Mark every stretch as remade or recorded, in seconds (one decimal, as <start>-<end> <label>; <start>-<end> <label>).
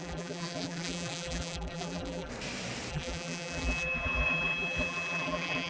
0.0-2.3 remade; 2.3-2.9 recorded; 2.9-5.7 remade